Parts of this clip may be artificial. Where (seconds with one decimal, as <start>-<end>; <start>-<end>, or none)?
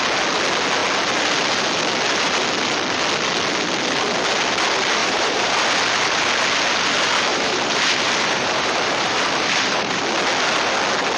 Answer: 5.0-5.6; 7.3-10.0